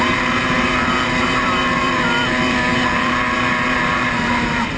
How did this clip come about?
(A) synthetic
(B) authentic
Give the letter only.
A